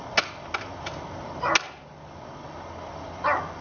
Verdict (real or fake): real